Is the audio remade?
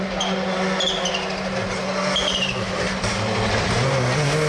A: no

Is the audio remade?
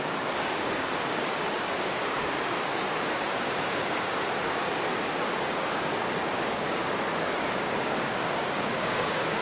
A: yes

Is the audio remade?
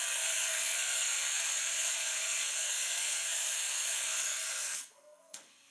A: yes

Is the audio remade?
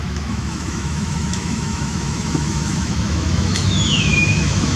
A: yes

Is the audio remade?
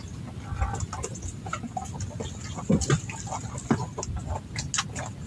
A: no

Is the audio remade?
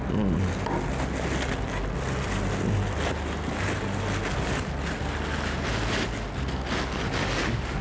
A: no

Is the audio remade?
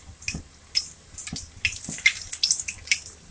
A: no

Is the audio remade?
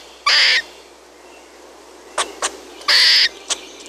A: no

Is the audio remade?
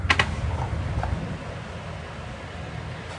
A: no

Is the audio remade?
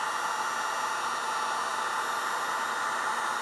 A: no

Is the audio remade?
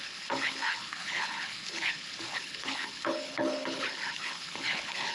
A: yes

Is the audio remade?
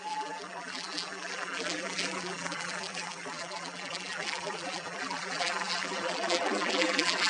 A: yes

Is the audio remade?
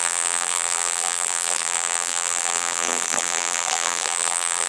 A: yes